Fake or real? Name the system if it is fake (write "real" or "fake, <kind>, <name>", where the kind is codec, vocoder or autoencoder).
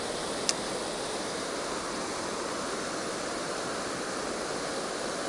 real